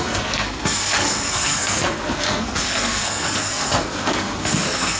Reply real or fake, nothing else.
fake